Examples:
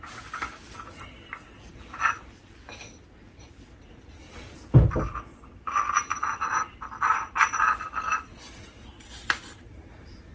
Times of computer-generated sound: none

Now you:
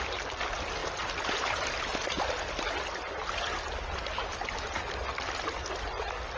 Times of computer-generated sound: none

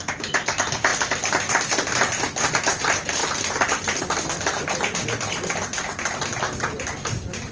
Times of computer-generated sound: 0.9-1.5 (vocoder, BigVGAN v2); 3.2-4.0

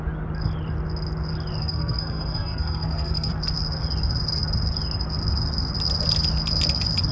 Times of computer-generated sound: 1.6-3.3 (codec, SNAC)